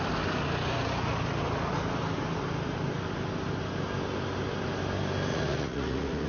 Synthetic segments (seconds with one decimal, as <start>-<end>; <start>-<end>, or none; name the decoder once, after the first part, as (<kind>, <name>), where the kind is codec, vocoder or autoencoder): 5.3-6.3 (vocoder, Vocos)